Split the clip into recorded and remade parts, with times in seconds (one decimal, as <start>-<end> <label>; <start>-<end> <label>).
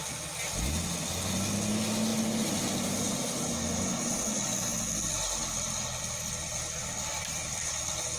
0.0-2.1 recorded; 2.1-4.0 remade; 4.0-5.4 recorded; 5.4-6.0 remade; 6.0-6.8 recorded; 6.8-7.7 remade; 7.7-8.2 recorded